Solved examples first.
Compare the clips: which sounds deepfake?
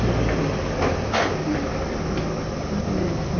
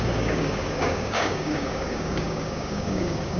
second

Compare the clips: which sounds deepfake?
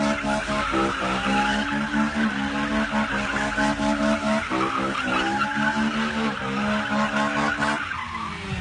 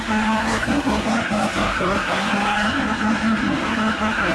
second